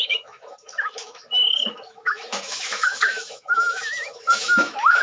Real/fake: fake